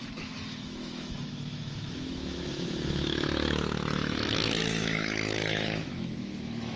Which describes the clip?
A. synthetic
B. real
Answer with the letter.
A